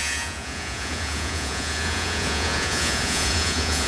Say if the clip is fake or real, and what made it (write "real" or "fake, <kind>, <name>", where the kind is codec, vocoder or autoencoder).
fake, vocoder, Vocos